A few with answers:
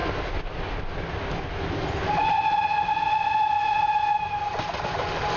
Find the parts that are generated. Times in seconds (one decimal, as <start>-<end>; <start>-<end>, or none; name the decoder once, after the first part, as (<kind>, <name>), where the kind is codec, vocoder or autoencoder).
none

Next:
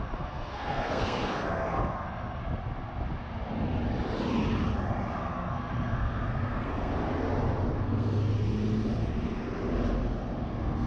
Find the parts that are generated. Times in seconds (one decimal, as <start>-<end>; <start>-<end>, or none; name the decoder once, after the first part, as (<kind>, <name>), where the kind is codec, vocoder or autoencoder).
0.0-2.4 (codec, SNAC); 5.2-6.9; 7.7-8.3; 10.4-10.9

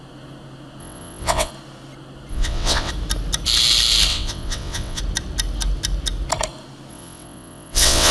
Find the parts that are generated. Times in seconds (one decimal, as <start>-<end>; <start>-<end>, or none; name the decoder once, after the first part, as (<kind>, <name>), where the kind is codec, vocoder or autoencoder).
0.8-1.5 (vocoder, WaveNeXt); 2.3-2.9; 4.1-5.0; 6.9-8.1

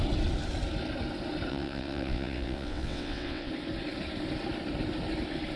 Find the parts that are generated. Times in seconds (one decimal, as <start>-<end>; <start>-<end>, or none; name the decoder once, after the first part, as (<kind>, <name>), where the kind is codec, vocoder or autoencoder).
1.5-3.5 (vocoder, WaveNeXt)

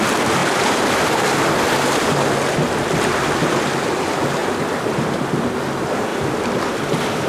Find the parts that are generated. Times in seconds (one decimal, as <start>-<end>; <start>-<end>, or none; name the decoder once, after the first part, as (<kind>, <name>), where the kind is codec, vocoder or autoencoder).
4.4-5.3 (vocoder, BigVGAN v2); 6.1-7.3